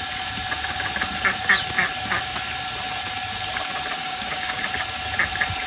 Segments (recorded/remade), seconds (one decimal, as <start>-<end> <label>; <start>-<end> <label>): 0.0-4.0 recorded; 4.0-4.6 remade; 4.6-5.7 recorded